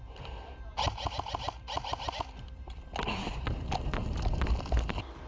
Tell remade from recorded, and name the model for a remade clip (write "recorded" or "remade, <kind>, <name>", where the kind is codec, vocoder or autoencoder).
recorded